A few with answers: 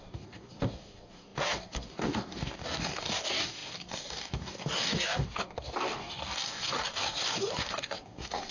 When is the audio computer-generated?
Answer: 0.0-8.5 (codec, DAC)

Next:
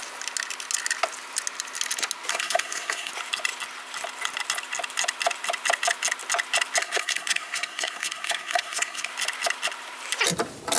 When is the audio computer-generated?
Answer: 2.3-3.1 (codec, SNAC); 6.8-9.1